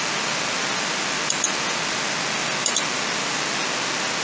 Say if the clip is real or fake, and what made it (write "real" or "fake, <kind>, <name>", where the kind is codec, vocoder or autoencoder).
real